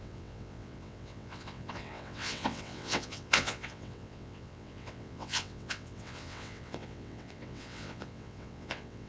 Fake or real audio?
fake